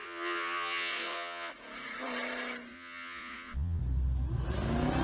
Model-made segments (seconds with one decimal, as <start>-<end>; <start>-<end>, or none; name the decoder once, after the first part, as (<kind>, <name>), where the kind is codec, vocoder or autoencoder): 0.0-1.5 (vocoder, Vocos); 2.7-3.8